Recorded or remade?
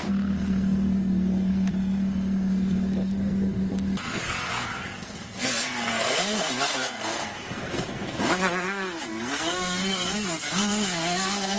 remade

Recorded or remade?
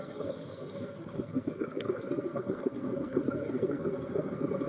remade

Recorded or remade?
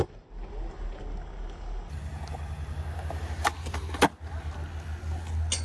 recorded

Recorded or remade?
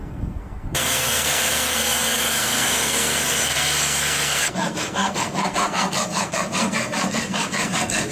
remade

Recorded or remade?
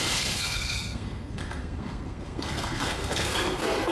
remade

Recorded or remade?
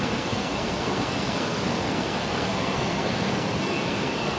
remade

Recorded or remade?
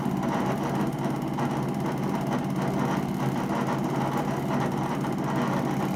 recorded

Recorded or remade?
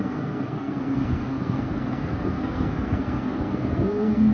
remade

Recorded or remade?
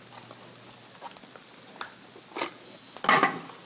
recorded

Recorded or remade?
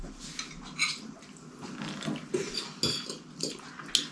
recorded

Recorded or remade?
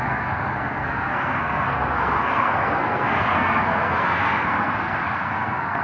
remade